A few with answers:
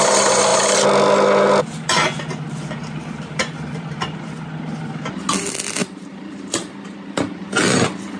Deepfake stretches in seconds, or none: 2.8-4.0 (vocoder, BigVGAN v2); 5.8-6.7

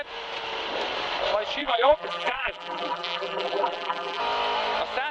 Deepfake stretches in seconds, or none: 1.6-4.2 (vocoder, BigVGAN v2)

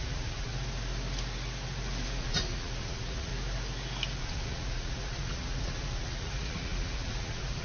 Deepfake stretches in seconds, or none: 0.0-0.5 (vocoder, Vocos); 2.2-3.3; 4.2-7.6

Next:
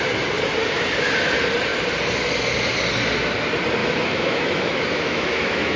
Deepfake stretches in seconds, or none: 3.8-5.8 (autoencoder, DAC-VAE)

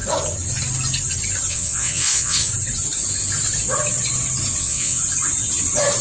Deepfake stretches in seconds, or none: 1.5-2.5 (vocoder, WaveNeXt); 4.6-5.0

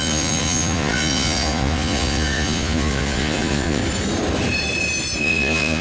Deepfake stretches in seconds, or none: 0.0-3.8 (vocoder, Vocos); 5.2-5.8

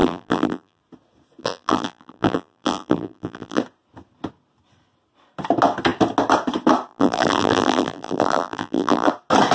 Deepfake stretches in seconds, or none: 0.0-0.8 (vocoder, BigVGAN v2); 1.4-3.6; 6.9-9.1

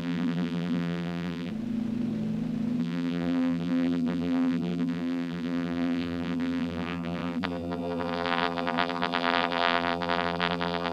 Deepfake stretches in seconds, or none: 0.0-1.5 (vocoder, BigVGAN v2); 2.8-10.9